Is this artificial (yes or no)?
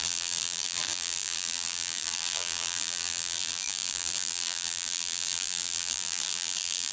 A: yes